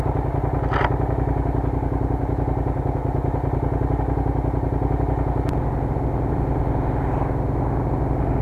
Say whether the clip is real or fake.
real